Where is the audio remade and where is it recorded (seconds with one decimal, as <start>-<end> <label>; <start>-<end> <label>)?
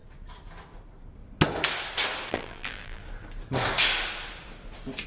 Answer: 0.0-2.3 recorded; 2.3-3.0 remade; 3.0-5.1 recorded